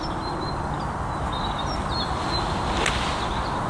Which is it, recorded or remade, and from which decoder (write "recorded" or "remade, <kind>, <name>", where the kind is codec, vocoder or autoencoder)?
recorded